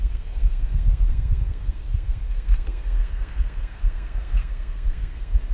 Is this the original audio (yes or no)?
no